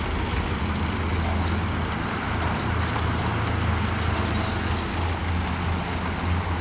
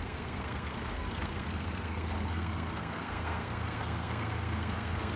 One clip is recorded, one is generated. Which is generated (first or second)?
second